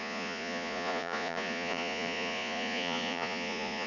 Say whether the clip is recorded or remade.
remade